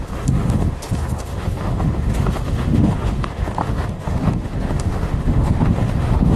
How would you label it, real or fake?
fake